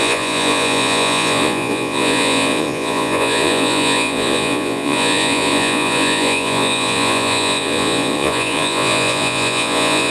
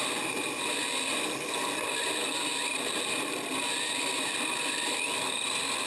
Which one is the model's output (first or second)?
first